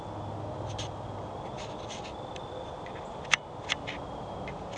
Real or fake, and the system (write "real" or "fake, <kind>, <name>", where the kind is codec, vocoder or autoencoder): real